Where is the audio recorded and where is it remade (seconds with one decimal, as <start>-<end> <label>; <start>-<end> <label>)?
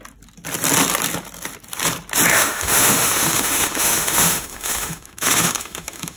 0.0-2.3 recorded; 2.3-6.2 remade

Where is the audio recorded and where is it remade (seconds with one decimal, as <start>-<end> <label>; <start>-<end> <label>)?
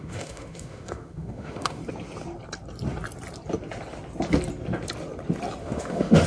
0.0-1.8 remade; 1.8-5.6 recorded; 5.6-6.3 remade